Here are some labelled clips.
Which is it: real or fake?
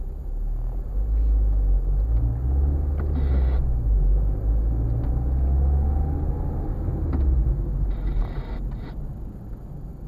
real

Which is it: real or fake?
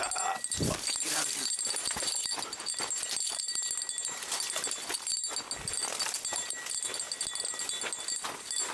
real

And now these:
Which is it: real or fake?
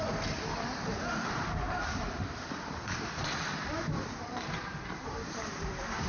fake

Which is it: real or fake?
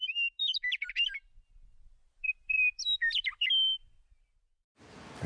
real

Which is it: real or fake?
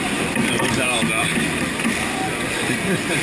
real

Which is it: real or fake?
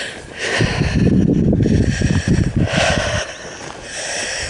real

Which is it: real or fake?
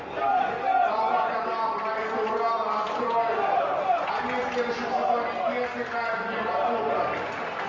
real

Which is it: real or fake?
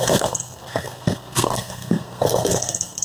fake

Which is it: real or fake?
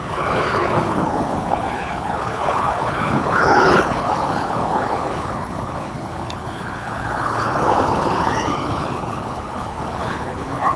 fake